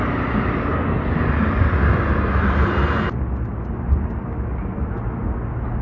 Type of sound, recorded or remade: recorded